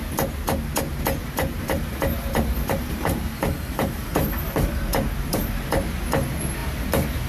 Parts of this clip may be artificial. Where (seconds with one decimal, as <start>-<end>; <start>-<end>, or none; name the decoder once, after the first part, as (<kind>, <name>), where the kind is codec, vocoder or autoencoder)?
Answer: 1.2-5.6 (vocoder, BigVGAN v2); 6.6-7.3